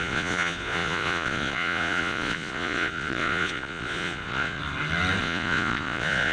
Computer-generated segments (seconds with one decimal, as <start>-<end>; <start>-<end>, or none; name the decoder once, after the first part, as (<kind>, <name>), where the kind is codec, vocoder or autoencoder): 0.0-4.6 (vocoder, Vocos); 5.2-6.3